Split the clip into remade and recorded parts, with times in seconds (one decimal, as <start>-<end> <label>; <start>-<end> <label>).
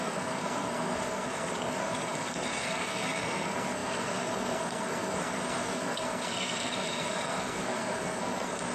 0.0-8.7 remade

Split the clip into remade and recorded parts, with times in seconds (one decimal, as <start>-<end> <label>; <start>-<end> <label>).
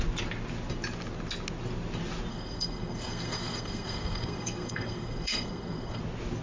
0.0-2.3 recorded; 2.3-6.0 remade; 6.0-6.4 recorded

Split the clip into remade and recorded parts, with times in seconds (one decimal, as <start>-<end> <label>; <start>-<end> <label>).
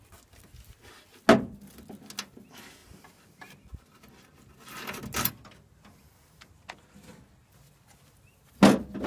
0.0-9.1 recorded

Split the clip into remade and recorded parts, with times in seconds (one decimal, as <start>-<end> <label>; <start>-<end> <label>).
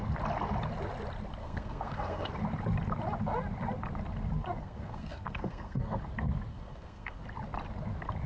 0.0-1.4 recorded; 1.4-2.3 remade; 2.3-4.6 recorded; 4.6-6.0 remade; 6.0-6.5 recorded; 6.5-7.2 remade; 7.2-8.3 recorded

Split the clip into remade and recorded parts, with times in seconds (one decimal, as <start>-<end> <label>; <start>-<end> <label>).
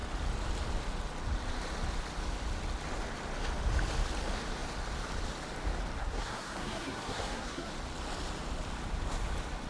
0.0-6.0 recorded; 6.0-7.7 remade; 7.7-9.7 recorded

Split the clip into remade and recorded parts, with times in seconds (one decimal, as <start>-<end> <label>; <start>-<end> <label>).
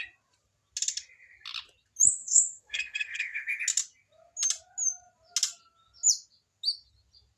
0.0-2.2 recorded; 2.2-3.6 remade; 3.6-7.4 recorded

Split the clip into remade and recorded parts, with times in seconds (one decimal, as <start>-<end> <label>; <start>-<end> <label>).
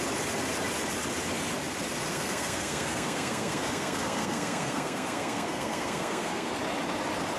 0.0-2.1 recorded; 2.1-6.5 remade; 6.5-7.4 recorded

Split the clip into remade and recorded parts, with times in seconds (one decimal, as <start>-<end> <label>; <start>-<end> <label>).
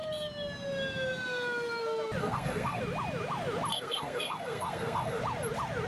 0.0-2.2 recorded; 2.2-2.8 remade; 2.8-3.7 recorded; 3.7-5.2 remade; 5.2-5.9 recorded